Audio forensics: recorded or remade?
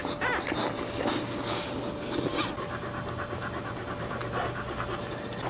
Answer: recorded